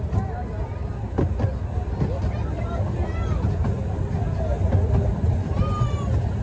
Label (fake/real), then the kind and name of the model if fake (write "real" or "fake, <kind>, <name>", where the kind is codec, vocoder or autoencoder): real